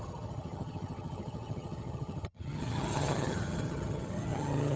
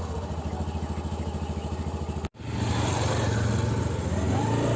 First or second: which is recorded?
second